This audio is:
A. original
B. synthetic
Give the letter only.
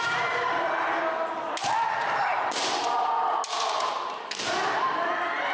A